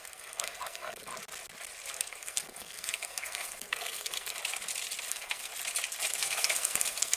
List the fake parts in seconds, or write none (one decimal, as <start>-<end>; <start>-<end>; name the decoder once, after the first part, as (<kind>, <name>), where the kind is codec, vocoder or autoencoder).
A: 0.0-1.1 (codec, SNAC); 1.9-4.4; 5.1-5.5; 6.1-7.2

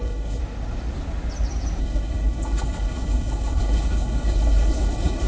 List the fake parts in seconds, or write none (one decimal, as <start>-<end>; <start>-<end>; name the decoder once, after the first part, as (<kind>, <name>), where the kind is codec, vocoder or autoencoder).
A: 0.0-0.4 (codec, HILCodec); 1.8-5.3

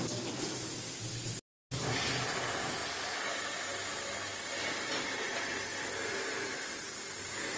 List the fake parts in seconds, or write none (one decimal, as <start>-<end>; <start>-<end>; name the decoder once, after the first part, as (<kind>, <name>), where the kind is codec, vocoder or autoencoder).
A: none

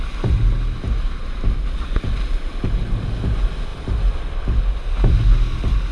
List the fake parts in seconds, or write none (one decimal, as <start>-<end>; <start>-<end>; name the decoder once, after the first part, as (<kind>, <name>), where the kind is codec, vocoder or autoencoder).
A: none